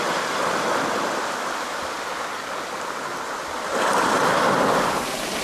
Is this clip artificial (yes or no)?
no